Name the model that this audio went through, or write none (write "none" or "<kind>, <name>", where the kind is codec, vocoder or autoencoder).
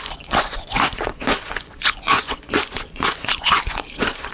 vocoder, Vocos